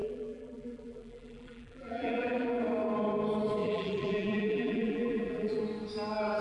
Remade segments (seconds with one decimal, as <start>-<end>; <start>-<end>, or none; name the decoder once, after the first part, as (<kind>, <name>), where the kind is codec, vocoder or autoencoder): 0.0-2.6 (vocoder, BigVGAN v2); 3.6-5.6